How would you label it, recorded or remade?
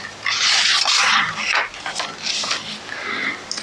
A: recorded